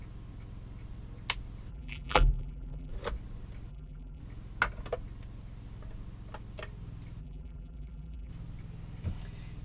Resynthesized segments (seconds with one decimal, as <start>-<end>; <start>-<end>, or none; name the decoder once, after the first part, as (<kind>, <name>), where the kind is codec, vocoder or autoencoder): 1.7-2.9 (vocoder, BigVGAN v2); 3.7-4.2; 7.2-8.3